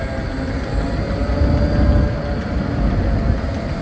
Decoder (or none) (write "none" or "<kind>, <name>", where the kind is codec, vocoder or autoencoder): none